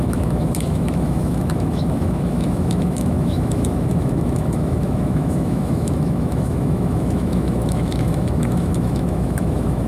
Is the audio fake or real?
fake